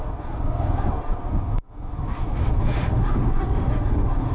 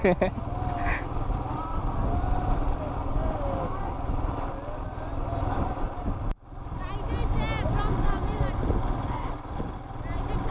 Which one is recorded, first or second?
second